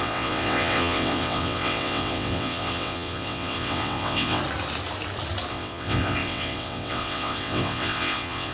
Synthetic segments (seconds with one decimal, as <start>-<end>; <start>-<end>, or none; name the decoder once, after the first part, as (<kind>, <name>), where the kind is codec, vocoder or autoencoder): 0.0-4.4 (vocoder, WaveNeXt); 5.5-8.5